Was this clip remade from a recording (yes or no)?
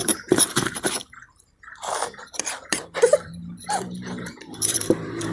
yes